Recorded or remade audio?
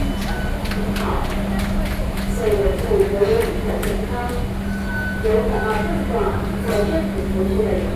recorded